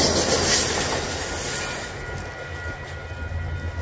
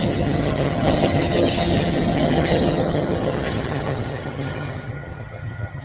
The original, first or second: first